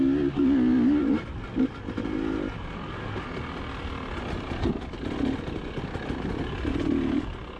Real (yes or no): yes